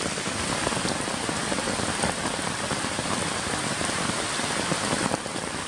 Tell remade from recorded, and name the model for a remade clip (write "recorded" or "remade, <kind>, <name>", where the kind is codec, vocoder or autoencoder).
recorded